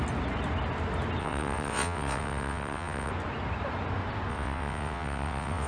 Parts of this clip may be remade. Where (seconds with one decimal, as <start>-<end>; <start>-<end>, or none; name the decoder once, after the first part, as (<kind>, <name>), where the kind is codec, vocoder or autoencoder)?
1.2-3.1 (vocoder, WaveNeXt); 4.3-5.7